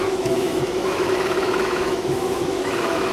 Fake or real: fake